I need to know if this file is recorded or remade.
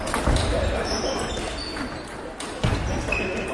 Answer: recorded